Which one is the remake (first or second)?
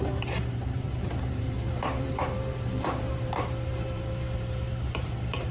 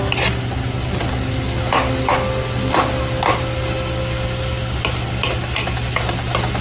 first